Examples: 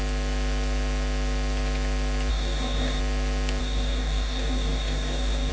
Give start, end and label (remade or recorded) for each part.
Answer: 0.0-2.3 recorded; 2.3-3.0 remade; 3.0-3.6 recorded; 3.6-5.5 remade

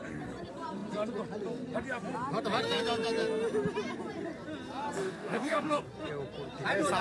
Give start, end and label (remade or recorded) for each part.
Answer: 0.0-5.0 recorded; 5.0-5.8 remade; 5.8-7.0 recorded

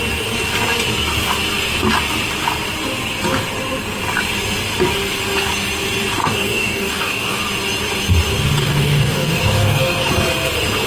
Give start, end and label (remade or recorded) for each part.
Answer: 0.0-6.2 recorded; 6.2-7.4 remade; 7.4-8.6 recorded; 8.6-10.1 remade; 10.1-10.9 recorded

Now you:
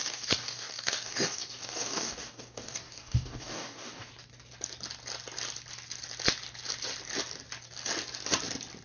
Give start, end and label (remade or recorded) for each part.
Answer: 0.0-4.1 remade; 4.1-8.8 recorded

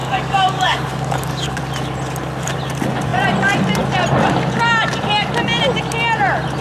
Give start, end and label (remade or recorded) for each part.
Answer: 0.0-1.6 remade; 1.6-6.6 recorded

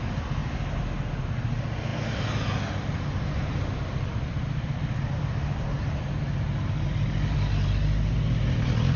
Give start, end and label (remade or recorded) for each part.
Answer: 0.0-9.0 recorded

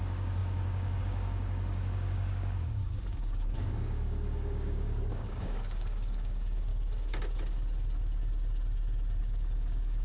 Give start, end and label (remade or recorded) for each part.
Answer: 0.0-6.7 remade; 6.7-9.2 recorded; 9.2-10.0 remade